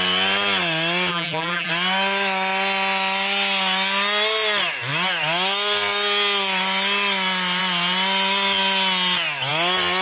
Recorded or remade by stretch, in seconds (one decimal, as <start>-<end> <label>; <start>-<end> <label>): 0.0-1.1 recorded; 1.1-1.7 remade; 1.7-10.0 recorded